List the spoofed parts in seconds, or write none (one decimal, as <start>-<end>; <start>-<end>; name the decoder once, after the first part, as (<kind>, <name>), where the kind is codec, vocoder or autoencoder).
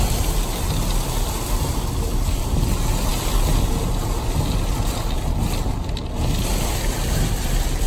none